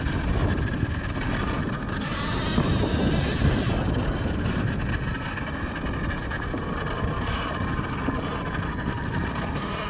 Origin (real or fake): real